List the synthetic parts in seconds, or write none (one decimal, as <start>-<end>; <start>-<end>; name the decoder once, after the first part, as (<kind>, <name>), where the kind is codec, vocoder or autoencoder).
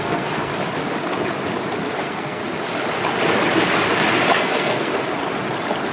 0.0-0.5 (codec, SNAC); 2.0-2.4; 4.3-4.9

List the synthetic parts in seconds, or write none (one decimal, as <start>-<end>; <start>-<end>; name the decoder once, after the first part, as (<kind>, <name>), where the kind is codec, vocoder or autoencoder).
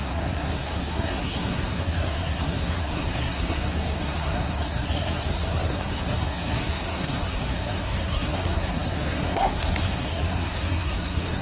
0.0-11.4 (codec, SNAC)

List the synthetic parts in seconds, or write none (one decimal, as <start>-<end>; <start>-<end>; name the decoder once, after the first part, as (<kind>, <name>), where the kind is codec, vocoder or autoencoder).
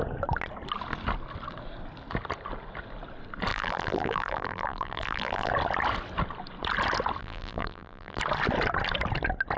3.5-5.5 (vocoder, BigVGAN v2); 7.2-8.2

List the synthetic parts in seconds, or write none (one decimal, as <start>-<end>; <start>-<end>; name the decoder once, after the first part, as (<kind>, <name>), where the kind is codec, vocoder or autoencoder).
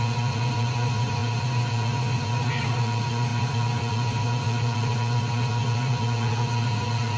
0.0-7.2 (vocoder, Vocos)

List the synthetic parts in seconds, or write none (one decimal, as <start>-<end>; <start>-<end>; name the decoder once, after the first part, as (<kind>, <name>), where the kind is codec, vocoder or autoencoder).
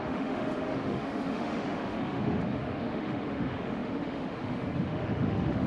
0.0-5.7 (autoencoder, DAC-VAE)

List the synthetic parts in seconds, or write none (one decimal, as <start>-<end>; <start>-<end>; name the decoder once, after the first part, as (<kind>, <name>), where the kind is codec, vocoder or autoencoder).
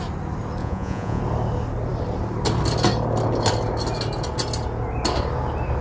0.6-1.2 (vocoder, Vocos)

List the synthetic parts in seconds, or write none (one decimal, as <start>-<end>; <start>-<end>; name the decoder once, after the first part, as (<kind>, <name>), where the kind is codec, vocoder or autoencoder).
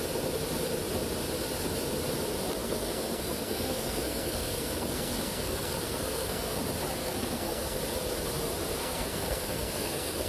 2.6-6.6 (codec, SNAC); 7.0-7.8; 8.7-10.3